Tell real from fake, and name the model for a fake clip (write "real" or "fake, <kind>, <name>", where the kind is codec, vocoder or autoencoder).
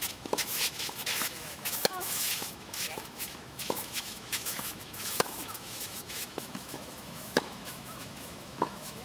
fake, autoencoder, DAC-VAE